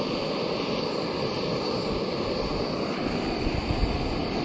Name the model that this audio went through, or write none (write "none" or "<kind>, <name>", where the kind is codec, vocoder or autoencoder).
none